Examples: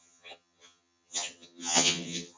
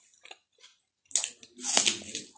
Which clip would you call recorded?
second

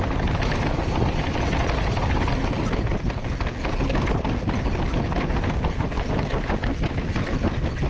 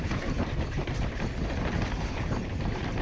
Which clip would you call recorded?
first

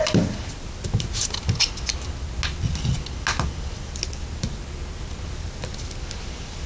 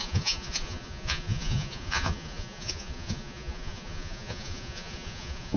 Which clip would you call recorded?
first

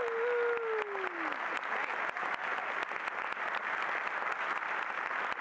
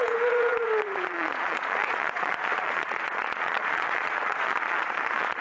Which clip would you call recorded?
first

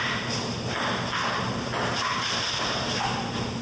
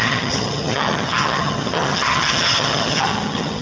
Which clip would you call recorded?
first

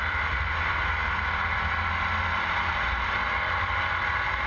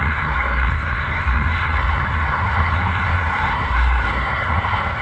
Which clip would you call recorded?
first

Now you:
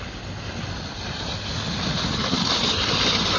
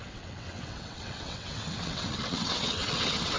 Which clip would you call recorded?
first